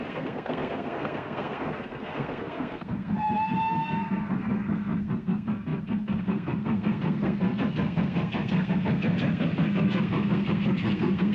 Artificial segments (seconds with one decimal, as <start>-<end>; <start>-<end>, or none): 0.0-11.3